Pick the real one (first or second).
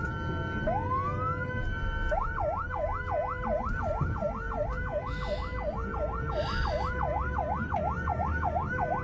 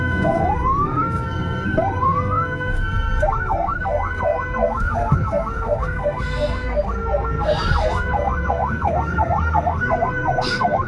first